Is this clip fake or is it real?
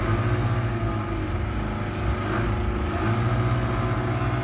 real